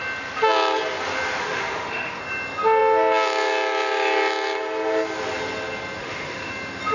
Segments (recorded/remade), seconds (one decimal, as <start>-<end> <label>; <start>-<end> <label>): 0.0-1.4 recorded; 1.4-2.2 remade; 2.2-6.0 recorded; 6.0-6.5 remade; 6.5-6.9 recorded